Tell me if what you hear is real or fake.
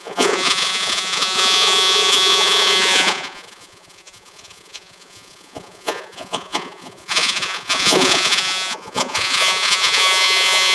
fake